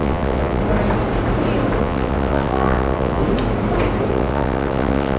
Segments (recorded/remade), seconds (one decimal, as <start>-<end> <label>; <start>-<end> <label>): 0.0-0.6 remade; 0.6-1.8 recorded; 1.8-3.2 remade; 3.2-4.1 recorded; 4.1-5.2 remade